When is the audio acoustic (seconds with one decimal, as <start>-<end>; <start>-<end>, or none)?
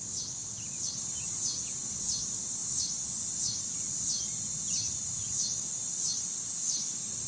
0.0-7.3